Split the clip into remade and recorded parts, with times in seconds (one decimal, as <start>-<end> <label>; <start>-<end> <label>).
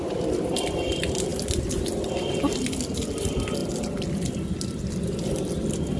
0.0-6.0 recorded